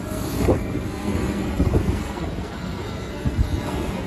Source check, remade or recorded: remade